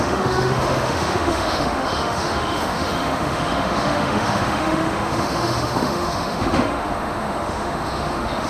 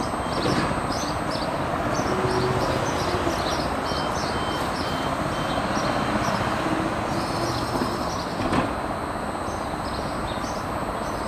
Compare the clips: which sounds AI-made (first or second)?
first